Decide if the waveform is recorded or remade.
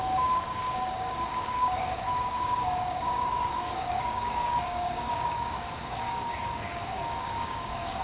remade